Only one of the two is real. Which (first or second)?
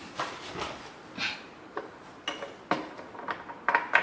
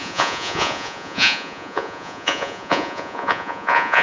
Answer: first